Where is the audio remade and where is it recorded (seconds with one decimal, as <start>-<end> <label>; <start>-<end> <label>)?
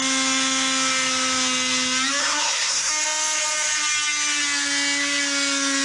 0.0-2.2 recorded; 2.2-2.9 remade; 2.9-5.8 recorded